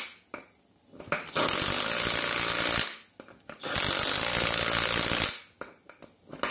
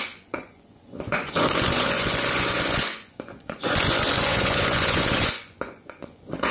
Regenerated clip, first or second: second